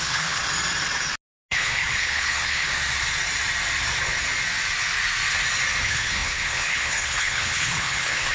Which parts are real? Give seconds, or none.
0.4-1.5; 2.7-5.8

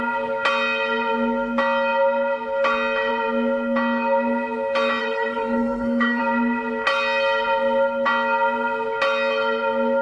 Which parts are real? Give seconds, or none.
0.0-5.0; 6.2-10.0

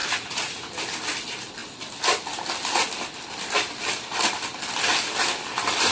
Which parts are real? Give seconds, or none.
0.7-5.9

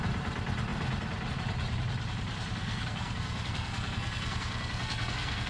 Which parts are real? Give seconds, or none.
0.0-2.6

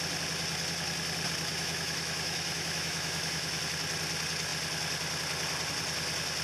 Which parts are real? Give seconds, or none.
0.0-1.5; 3.6-6.4

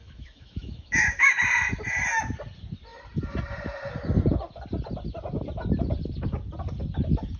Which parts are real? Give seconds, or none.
1.4-7.4

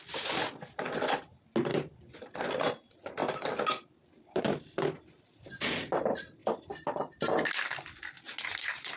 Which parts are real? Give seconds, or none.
0.0-1.7; 2.6-3.2; 5.5-6.4; 7.2-9.0

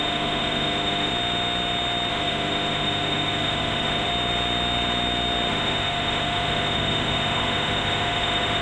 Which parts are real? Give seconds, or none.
1.1-2.1; 4.1-5.5